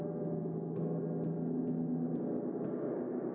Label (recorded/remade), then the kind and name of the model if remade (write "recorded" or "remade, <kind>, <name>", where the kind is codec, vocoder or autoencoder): recorded